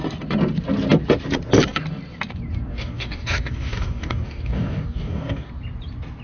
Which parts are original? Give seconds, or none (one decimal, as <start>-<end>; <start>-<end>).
0.0-2.7; 5.5-6.2